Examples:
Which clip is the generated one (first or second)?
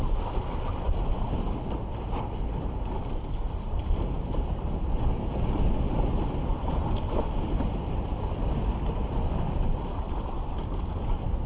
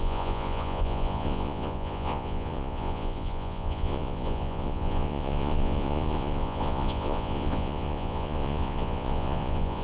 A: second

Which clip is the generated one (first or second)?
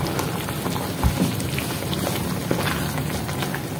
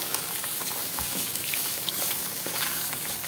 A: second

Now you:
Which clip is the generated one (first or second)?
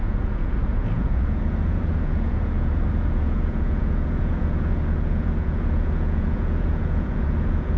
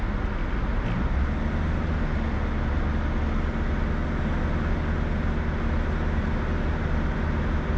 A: first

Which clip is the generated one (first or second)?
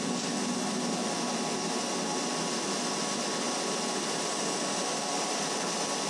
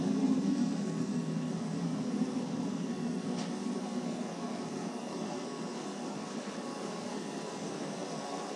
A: second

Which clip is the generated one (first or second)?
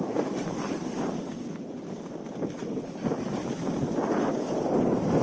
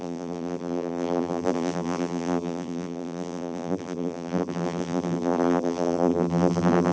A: second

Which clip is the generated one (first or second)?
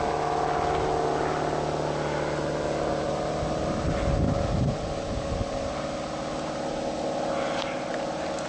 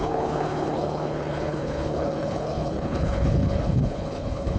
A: second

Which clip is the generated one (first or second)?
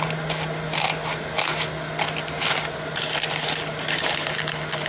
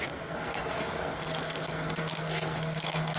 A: second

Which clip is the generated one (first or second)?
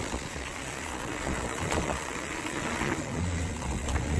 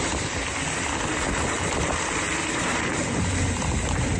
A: first